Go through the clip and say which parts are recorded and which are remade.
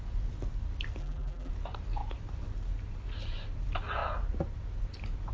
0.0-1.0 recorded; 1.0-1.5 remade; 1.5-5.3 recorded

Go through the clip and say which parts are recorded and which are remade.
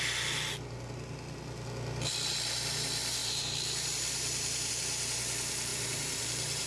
0.0-3.2 recorded; 3.2-4.7 remade; 4.7-5.7 recorded; 5.7-6.7 remade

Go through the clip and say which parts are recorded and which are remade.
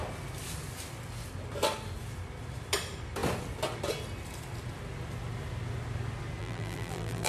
0.0-6.4 recorded; 6.4-7.3 remade